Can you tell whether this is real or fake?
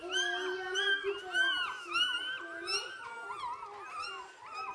real